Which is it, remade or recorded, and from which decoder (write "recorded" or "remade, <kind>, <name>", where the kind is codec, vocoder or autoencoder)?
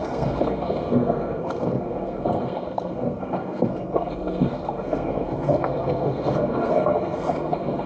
remade, codec, SNAC